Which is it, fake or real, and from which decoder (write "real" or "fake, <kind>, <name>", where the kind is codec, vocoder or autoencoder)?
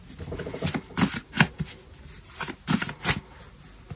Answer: real